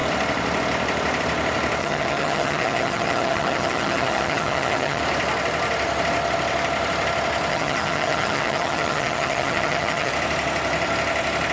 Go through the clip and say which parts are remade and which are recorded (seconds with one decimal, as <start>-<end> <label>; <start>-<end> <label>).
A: 0.0-1.8 recorded; 1.8-5.0 remade; 5.0-7.5 recorded; 7.5-10.1 remade; 10.1-11.5 recorded